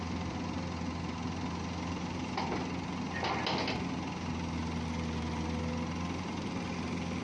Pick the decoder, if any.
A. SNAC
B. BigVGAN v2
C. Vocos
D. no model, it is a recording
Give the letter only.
D